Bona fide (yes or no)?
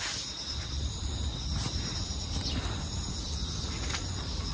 yes